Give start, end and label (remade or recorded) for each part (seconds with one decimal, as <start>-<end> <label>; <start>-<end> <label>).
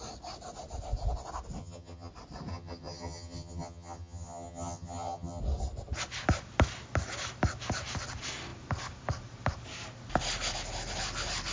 0.0-1.6 recorded; 1.6-2.1 remade; 2.1-2.5 recorded; 2.5-5.4 remade; 5.4-11.5 recorded